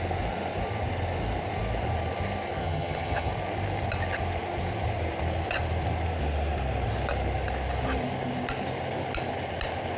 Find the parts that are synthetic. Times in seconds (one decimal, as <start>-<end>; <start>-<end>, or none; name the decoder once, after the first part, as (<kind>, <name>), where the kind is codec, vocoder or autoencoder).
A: 2.6-3.3 (vocoder, HiFi-GAN)